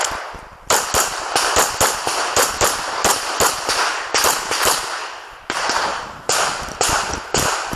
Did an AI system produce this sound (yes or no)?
yes